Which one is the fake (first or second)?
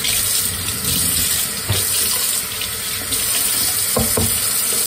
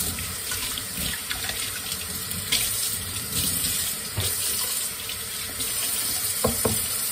second